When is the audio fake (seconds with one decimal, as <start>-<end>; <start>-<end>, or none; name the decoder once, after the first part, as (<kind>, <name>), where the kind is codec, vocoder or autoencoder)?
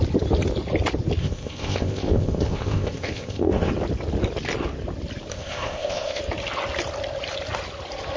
1.2-3.7 (codec, ZipCodec); 5.3-6.2